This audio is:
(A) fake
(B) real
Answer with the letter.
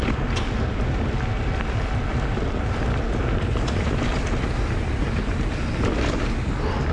B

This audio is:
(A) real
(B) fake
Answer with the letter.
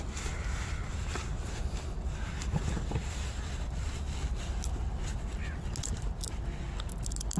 A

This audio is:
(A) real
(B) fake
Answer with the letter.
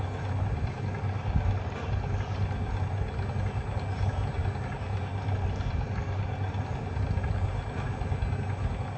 A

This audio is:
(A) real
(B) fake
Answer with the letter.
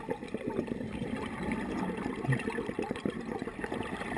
A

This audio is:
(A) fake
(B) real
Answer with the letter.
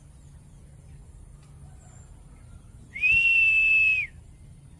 B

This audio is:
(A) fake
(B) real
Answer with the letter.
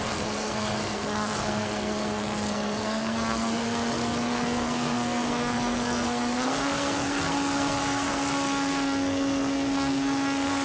A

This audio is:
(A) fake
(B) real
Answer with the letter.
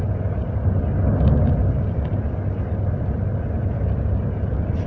B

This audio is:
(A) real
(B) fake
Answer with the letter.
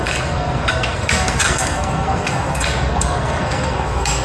B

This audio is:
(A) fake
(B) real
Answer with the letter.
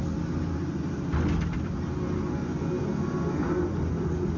B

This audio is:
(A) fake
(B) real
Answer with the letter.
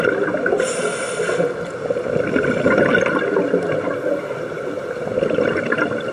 B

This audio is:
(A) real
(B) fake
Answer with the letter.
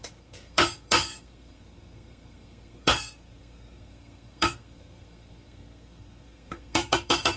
B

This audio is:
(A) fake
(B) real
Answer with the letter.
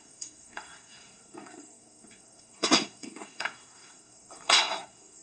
A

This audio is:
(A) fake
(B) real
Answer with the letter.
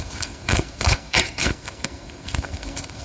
A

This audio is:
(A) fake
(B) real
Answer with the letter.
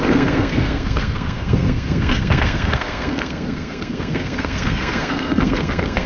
A